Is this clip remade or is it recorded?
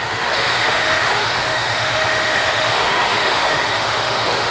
remade